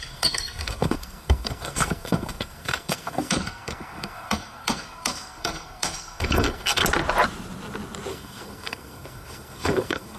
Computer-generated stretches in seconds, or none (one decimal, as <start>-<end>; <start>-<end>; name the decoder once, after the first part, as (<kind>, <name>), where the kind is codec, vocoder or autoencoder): 0.0-6.8 (codec, SNAC); 8.1-10.2